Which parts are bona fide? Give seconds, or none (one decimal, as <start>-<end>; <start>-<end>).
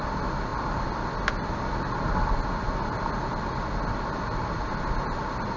0.0-5.6